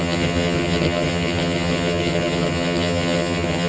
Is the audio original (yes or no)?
no